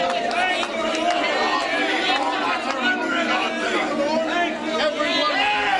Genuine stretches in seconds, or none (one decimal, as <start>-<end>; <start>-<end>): 0.0-5.8